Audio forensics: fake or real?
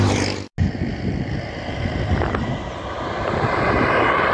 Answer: real